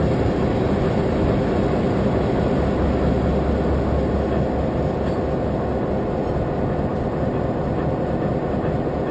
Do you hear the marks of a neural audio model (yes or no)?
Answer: no